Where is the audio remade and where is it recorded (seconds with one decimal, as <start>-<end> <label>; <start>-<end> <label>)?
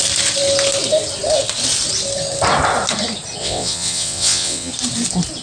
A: 0.0-3.4 recorded; 3.4-4.7 remade; 4.7-5.4 recorded